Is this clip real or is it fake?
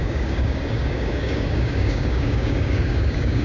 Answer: fake